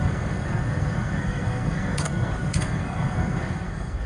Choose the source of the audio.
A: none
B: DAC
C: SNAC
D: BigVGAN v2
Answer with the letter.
C